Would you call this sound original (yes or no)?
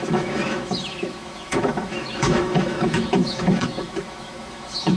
no